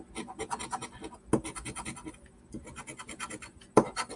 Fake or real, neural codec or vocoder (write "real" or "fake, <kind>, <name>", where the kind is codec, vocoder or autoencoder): real